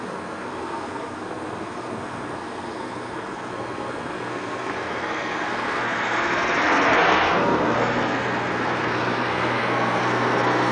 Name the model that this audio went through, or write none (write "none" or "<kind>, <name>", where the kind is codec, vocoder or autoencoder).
codec, SNAC